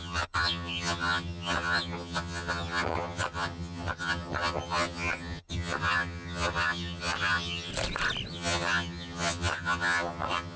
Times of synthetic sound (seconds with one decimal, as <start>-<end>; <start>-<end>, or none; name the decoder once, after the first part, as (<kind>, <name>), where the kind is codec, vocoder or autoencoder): 0.0-7.7 (vocoder, HiFi-GAN); 8.3-10.6